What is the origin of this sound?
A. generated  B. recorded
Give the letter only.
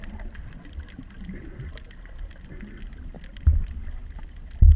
B